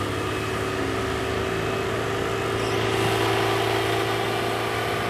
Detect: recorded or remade recorded